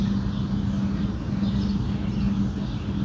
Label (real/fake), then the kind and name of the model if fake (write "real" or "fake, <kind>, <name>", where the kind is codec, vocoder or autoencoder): real